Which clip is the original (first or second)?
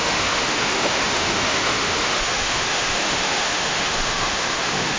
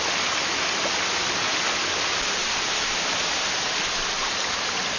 second